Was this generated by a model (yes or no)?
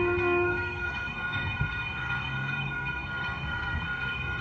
yes